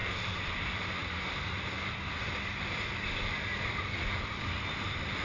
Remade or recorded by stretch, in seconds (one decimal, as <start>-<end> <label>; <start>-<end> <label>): 0.0-1.0 remade; 1.0-4.1 recorded; 4.1-5.2 remade